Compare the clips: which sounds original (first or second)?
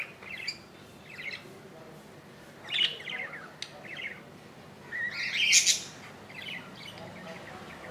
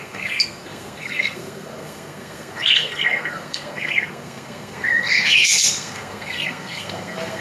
first